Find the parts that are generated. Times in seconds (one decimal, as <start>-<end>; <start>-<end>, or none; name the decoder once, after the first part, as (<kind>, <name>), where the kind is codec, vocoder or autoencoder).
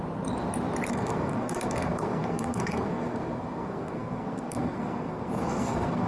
0.9-6.1 (codec, SNAC)